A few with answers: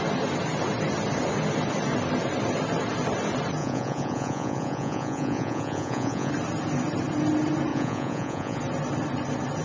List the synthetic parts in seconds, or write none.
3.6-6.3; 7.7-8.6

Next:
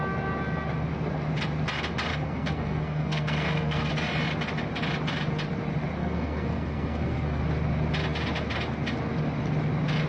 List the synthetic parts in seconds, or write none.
2.1-3.9; 6.0-7.4

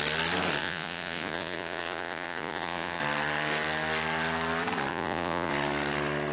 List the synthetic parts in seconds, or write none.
0.6-3.0; 4.9-5.5

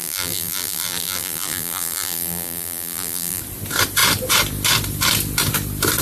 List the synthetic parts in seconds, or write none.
0.0-3.4

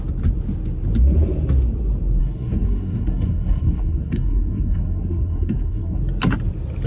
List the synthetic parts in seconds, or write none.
2.2-6.0